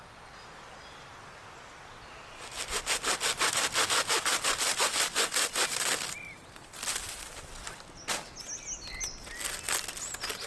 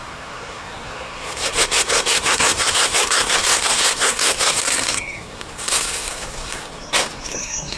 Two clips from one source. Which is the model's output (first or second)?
second